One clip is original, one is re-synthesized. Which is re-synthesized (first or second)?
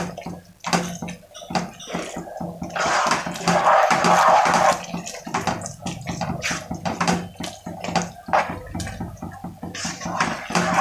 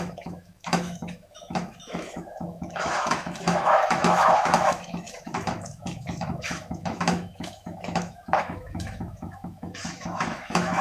second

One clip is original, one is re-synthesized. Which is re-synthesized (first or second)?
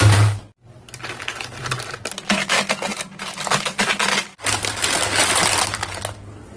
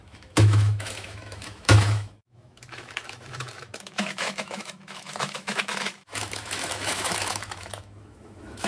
second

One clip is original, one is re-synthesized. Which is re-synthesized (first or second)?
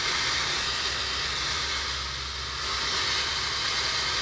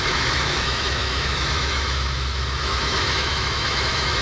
second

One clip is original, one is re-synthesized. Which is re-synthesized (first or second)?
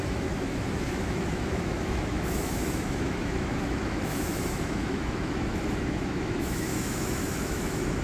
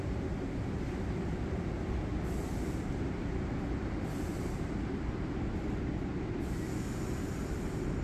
first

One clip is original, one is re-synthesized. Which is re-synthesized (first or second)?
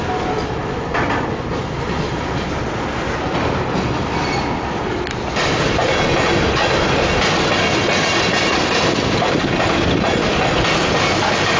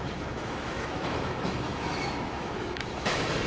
second